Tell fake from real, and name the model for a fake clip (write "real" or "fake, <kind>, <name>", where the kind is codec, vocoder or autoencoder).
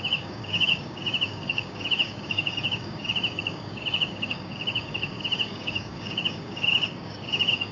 fake, codec, DAC